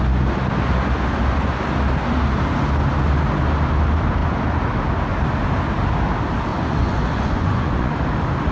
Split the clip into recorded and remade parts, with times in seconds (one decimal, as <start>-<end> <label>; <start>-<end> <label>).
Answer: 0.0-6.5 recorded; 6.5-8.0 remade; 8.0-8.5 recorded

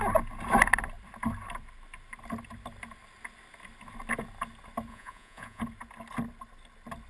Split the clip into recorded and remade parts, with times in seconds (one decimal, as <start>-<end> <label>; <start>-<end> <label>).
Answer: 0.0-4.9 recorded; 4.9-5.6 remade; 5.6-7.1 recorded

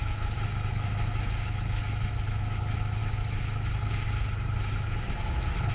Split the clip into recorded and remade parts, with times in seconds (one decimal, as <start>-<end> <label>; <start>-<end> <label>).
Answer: 0.0-2.6 remade; 2.6-3.0 recorded; 3.0-5.7 remade